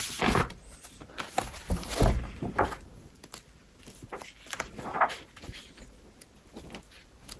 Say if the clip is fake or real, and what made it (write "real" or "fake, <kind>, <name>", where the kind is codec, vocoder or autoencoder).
real